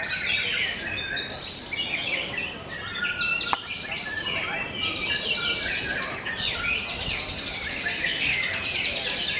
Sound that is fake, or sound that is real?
fake